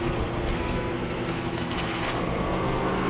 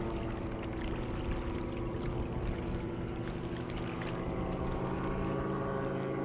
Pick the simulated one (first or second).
first